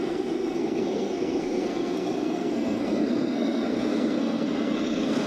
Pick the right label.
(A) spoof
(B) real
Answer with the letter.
A